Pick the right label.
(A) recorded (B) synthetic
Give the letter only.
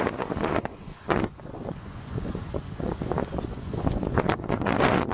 B